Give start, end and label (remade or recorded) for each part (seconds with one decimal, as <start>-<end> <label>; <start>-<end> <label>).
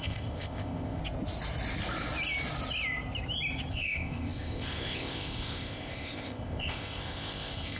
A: 0.0-1.0 remade; 1.0-3.7 recorded; 3.7-7.8 remade